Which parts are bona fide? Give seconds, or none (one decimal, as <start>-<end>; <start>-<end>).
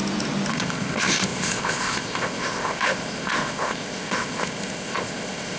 0.0-0.5